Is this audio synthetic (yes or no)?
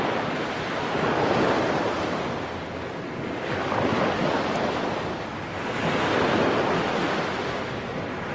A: no